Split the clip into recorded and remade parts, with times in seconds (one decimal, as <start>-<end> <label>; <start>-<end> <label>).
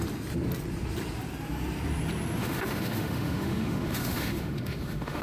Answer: 0.0-2.4 recorded; 2.4-5.2 remade